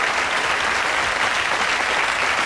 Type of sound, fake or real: real